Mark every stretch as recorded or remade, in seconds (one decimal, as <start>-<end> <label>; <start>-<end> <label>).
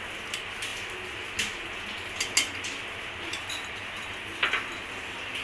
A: 0.0-5.4 recorded